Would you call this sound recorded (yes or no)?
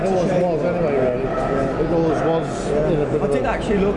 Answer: yes